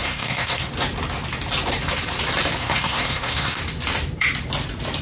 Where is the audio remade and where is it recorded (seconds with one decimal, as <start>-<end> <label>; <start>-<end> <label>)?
0.0-0.7 remade; 0.7-2.6 recorded; 2.6-3.6 remade; 3.6-5.0 recorded